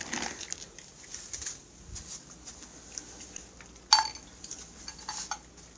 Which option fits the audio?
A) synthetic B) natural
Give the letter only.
B